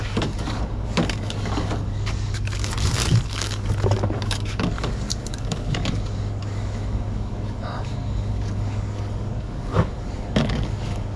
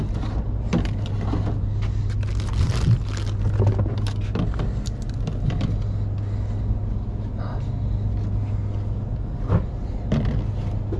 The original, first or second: second